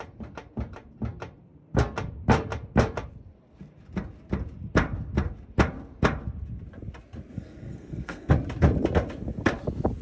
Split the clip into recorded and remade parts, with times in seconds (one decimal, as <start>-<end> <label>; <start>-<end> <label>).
0.0-7.3 recorded; 7.3-8.3 remade; 8.3-10.0 recorded